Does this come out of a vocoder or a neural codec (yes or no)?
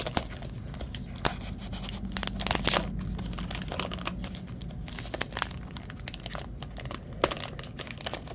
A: no